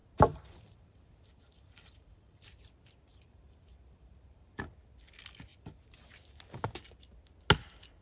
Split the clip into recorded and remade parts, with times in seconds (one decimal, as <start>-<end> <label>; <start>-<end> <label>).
0.0-2.4 remade; 2.4-3.1 recorded; 3.1-4.6 remade; 4.6-5.5 recorded; 5.5-6.1 remade; 6.1-8.0 recorded